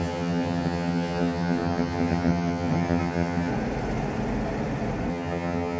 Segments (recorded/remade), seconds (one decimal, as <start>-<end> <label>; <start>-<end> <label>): 0.0-3.5 remade; 3.5-5.1 recorded; 5.1-5.8 remade